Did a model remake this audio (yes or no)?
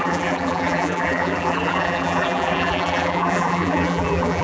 yes